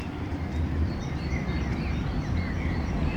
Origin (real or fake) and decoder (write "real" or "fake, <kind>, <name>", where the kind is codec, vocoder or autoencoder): fake, vocoder, BigVGAN v2